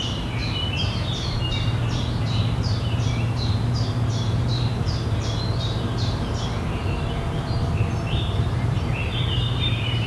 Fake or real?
fake